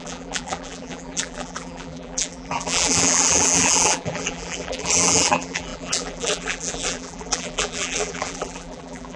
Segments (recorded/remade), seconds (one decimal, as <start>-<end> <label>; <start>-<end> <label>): 0.0-9.2 remade